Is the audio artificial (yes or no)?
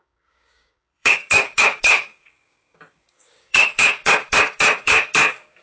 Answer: yes